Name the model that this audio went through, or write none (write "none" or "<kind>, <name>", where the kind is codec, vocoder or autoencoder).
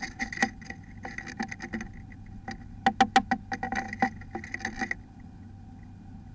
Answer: none